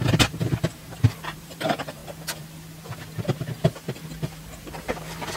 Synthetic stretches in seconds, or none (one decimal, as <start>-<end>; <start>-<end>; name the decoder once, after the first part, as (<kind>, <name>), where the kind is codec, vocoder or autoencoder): 0.0-2.0 (vocoder, BigVGAN v2); 4.4-5.4